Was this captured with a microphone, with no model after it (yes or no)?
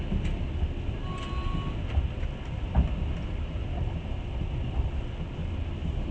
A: yes